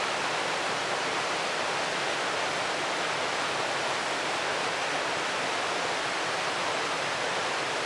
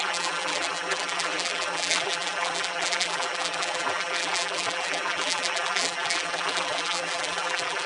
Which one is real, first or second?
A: first